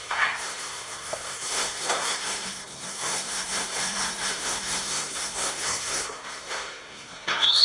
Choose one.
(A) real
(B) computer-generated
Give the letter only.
B